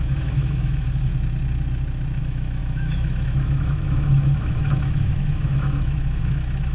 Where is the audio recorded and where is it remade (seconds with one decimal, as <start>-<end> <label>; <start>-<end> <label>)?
0.0-1.1 remade; 1.1-2.2 recorded; 2.2-6.7 remade